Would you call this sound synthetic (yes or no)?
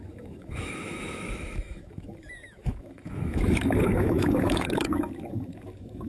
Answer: yes